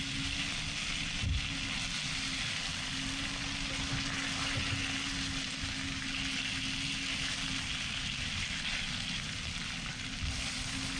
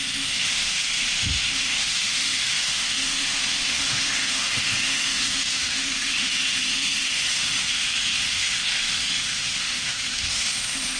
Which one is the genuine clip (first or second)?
first